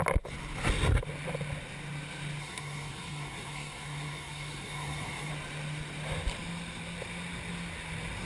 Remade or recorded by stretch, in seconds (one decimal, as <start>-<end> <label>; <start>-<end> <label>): 0.0-2.4 recorded; 2.4-5.3 remade; 5.3-8.3 recorded